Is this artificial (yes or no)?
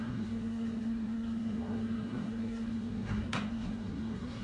yes